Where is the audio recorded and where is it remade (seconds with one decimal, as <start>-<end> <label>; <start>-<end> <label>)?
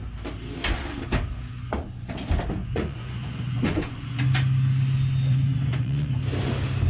0.0-2.6 recorded; 2.6-4.2 remade; 4.2-5.3 recorded; 5.3-6.2 remade; 6.2-6.9 recorded